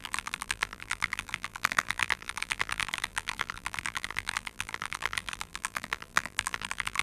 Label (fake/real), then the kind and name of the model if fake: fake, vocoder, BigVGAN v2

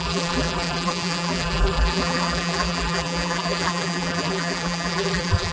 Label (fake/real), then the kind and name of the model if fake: fake, vocoder, BigVGAN v2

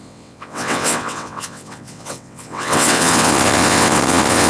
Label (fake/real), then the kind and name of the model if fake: fake, vocoder, WaveNeXt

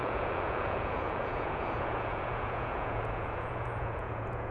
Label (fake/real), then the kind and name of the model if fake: fake, vocoder, Vocos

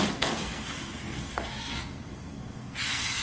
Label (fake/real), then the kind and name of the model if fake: fake, codec, SNAC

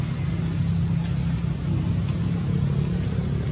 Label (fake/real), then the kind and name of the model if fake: real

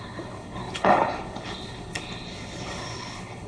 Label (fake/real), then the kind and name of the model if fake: fake, codec, HILCodec